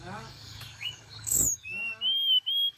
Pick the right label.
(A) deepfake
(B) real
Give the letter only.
A